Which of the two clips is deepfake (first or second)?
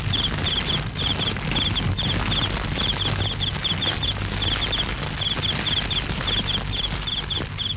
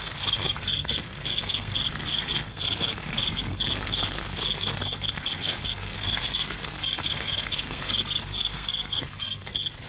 second